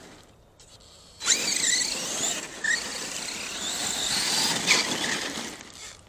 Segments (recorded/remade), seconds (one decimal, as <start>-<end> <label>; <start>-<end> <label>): 0.0-6.1 recorded